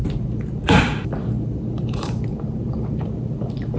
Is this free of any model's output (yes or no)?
no